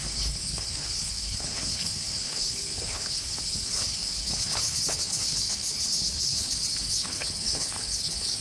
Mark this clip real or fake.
fake